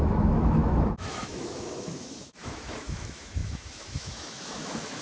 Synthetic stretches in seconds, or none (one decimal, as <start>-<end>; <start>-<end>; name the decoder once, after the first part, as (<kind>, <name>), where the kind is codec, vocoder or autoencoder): 0.0-5.0 (autoencoder, DAC-VAE)